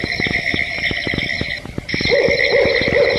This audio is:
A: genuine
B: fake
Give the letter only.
A